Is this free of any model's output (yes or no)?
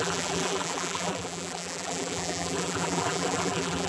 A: no